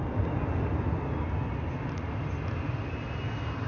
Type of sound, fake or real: real